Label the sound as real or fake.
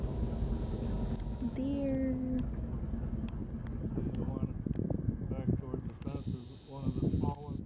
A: real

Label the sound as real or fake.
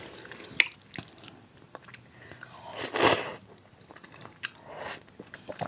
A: real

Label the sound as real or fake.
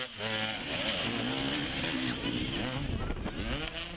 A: real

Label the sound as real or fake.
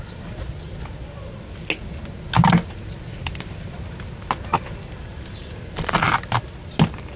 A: real